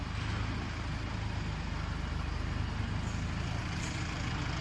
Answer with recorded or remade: recorded